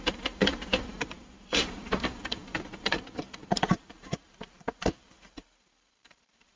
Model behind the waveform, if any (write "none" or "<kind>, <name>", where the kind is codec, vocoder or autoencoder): vocoder, BigVGAN v2